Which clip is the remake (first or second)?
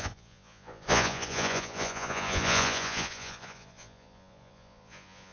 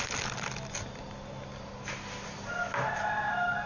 first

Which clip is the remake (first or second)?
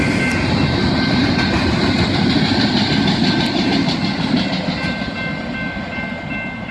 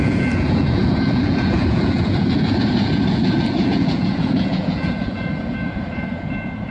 second